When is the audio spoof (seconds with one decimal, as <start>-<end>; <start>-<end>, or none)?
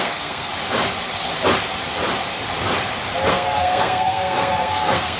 0.0-0.5; 3.3-5.2